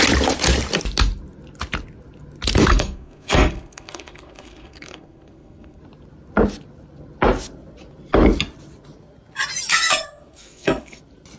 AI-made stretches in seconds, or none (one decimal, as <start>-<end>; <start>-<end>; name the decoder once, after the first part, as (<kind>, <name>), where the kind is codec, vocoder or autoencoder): 2.7-5.8 (codec, SNAC); 9.7-11.0